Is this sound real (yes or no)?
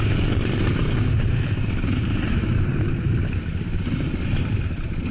no